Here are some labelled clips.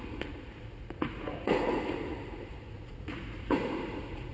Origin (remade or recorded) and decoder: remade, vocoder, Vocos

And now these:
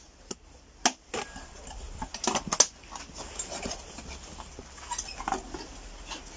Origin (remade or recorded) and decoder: recorded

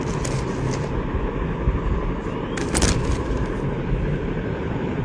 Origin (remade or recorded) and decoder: recorded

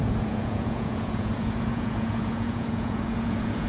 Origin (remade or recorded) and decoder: remade, vocoder, Vocos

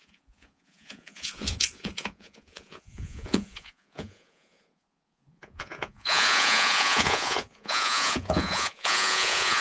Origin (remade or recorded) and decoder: remade, vocoder, Vocos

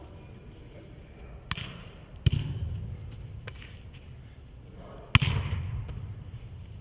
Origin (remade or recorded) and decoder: recorded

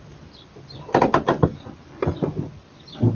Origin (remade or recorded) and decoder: recorded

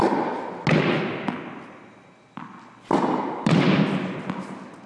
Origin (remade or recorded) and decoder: recorded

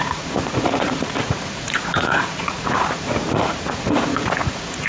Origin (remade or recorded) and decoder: remade, vocoder, Vocos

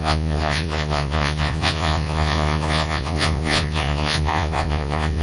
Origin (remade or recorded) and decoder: remade, vocoder, Vocos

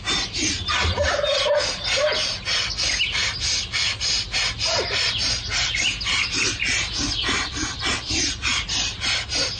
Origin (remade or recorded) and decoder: recorded